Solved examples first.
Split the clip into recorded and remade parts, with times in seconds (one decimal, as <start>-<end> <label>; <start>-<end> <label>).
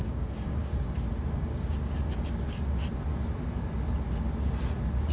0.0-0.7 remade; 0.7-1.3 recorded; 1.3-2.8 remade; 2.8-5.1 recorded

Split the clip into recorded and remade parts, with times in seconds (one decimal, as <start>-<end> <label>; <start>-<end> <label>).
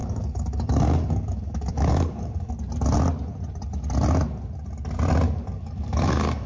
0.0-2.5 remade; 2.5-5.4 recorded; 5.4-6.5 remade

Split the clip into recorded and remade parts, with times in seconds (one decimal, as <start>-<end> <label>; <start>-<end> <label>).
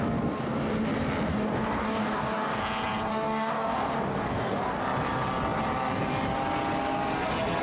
0.0-1.3 recorded; 1.3-2.6 remade; 2.6-3.1 recorded; 3.1-4.8 remade; 4.8-7.6 recorded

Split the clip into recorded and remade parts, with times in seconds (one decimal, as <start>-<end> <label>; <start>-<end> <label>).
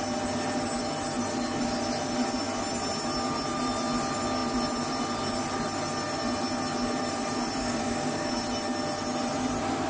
0.0-7.6 recorded; 7.6-8.3 remade; 8.3-9.9 recorded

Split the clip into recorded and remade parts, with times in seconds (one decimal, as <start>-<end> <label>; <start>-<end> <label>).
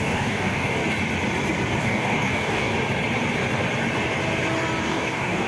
0.0-0.8 remade; 0.8-1.8 recorded; 1.8-2.7 remade; 2.7-4.8 recorded; 4.8-5.5 remade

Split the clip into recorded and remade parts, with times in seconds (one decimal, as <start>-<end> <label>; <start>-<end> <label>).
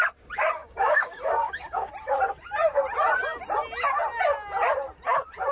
0.0-0.6 recorded; 0.6-1.9 remade; 1.9-5.5 recorded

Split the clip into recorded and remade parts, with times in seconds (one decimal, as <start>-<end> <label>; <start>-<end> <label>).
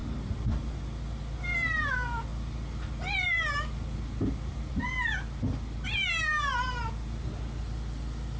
0.0-8.4 recorded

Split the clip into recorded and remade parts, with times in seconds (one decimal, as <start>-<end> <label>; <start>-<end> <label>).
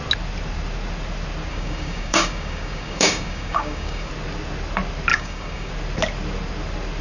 0.0-1.5 recorded; 1.5-4.1 remade; 4.1-5.1 recorded; 5.1-5.7 remade; 5.7-7.0 recorded